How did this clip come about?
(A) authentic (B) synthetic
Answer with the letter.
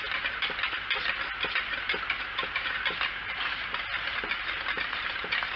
A